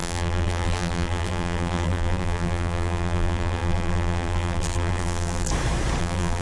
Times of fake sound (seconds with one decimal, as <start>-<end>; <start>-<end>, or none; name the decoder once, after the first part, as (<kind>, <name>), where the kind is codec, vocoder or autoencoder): 0.0-5.5 (vocoder, BigVGAN v2); 6.0-6.4

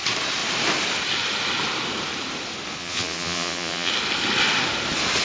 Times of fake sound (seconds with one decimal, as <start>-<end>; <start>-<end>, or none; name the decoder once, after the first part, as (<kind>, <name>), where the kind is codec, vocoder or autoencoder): 2.8-3.9 (vocoder, Vocos)

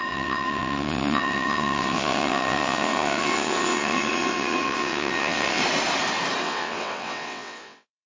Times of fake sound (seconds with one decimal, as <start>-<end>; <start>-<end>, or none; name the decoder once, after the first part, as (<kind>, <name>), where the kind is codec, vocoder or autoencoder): 0.0-5.6 (vocoder, WaveNeXt); 6.4-8.1

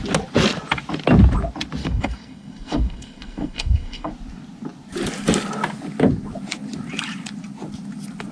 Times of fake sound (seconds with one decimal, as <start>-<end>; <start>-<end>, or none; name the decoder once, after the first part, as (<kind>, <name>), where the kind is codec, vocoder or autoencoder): 1.8-4.1 (codec, SNAC)

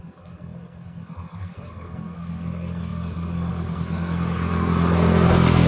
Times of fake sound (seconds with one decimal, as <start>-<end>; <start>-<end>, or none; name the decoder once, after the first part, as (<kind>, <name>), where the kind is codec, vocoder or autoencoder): 0.0-5.7 (codec, SNAC)

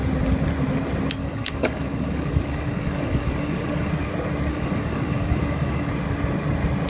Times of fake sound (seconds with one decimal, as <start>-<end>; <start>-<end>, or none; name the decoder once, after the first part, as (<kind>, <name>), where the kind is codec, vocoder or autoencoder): 1.2-3.9 (codec, DAC); 4.5-5.9

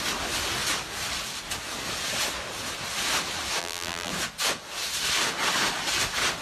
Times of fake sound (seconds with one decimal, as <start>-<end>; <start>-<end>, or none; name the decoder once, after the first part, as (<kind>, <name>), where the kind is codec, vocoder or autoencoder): 3.6-4.1 (vocoder, BigVGAN v2)